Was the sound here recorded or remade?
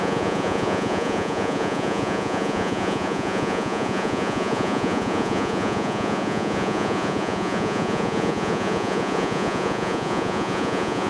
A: remade